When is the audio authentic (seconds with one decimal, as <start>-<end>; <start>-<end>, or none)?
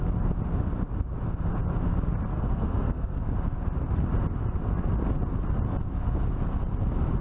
0.0-2.3; 3.2-7.2